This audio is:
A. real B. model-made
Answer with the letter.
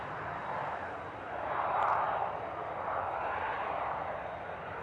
A